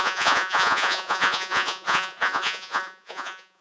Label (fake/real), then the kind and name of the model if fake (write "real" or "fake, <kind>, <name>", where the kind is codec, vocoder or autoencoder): fake, vocoder, Vocos